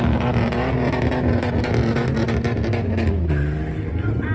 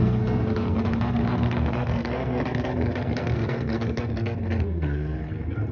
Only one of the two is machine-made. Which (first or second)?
second